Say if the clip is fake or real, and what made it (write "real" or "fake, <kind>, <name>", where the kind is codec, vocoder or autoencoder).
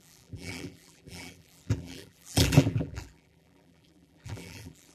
fake, vocoder, BigVGAN v2